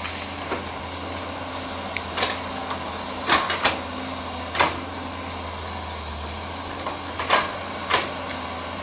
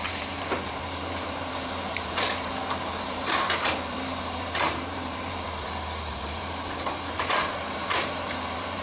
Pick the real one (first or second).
first